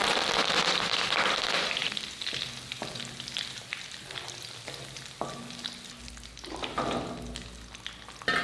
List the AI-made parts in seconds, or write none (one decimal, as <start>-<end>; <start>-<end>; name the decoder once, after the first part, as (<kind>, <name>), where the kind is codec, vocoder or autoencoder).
none